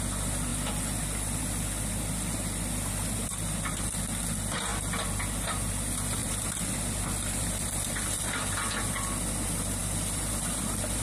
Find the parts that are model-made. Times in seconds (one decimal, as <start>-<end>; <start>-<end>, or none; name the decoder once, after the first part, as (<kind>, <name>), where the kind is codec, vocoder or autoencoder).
6.2-8.9 (vocoder, BigVGAN v2); 9.8-10.3